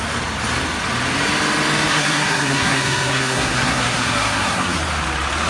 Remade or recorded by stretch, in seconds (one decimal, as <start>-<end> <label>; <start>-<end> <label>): 0.0-1.9 recorded; 1.9-4.8 remade; 4.8-5.5 recorded

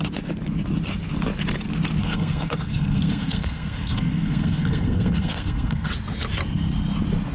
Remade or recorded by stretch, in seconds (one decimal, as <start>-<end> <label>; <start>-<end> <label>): 0.0-2.0 recorded; 2.0-5.9 remade; 5.9-7.3 recorded

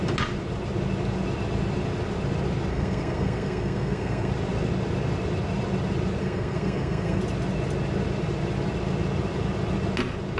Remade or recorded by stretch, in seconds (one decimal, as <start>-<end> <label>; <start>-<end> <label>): 0.0-2.7 recorded; 2.7-4.3 remade; 4.3-6.2 recorded; 6.2-7.2 remade; 7.2-10.4 recorded

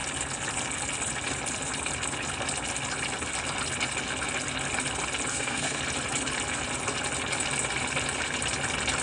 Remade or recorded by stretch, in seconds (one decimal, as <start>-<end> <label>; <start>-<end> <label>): 0.0-5.3 recorded; 5.3-5.8 remade; 5.8-9.0 recorded

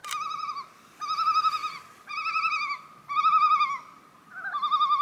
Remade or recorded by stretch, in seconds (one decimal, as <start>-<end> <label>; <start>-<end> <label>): 0.0-5.0 recorded